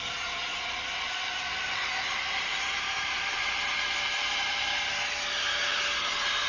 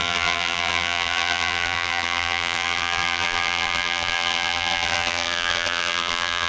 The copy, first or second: second